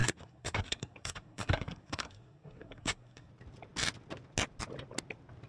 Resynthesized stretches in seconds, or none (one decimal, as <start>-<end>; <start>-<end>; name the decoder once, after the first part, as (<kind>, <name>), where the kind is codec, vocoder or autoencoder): 0.0-3.3 (codec, SNAC)